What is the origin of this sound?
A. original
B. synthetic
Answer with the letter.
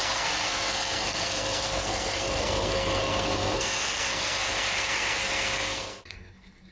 B